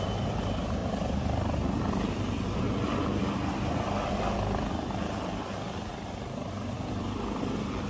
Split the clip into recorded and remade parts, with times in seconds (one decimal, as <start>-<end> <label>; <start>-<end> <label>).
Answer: 0.0-0.8 recorded; 0.8-4.7 remade; 4.7-5.9 recorded; 5.9-7.9 remade